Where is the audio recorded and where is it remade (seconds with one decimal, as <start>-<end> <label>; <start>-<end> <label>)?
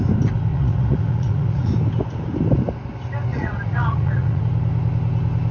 0.0-0.5 recorded; 0.5-1.7 remade; 1.7-3.3 recorded; 3.3-4.4 remade; 4.4-5.5 recorded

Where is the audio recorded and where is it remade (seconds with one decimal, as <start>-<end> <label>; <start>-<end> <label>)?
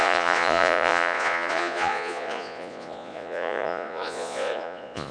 0.0-5.1 remade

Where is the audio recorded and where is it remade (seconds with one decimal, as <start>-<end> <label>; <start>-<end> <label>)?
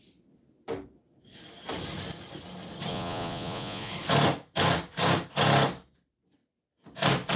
0.0-2.9 recorded; 2.9-3.9 remade; 3.9-7.4 recorded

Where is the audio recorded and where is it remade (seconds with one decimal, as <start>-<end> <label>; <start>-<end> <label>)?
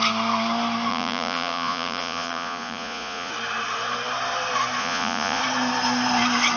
0.0-0.9 recorded; 0.9-3.3 remade; 3.3-4.8 recorded; 4.8-5.4 remade; 5.4-6.6 recorded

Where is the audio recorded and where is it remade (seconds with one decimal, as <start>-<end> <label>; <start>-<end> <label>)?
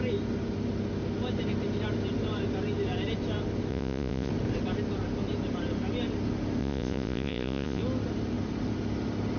0.0-3.7 recorded; 3.7-4.3 remade; 4.3-6.6 recorded; 6.6-7.8 remade; 7.8-9.4 recorded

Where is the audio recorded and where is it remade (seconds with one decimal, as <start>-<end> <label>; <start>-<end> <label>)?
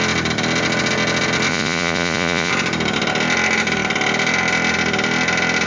0.0-1.5 recorded; 1.5-2.5 remade; 2.5-5.7 recorded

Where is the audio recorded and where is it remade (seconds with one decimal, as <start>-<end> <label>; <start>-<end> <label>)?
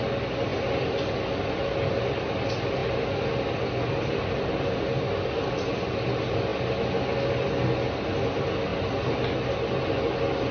0.0-10.5 recorded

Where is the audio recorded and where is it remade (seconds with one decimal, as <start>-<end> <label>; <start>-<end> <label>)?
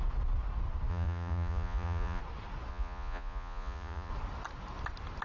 0.0-0.9 recorded; 0.9-2.2 remade; 2.2-2.7 recorded; 2.7-4.1 remade; 4.1-5.2 recorded